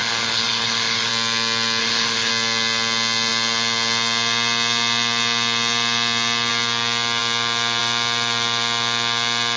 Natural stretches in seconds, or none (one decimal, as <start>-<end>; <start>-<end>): 1.1-1.8; 2.3-9.6